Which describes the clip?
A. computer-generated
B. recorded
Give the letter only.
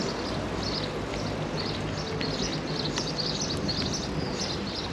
B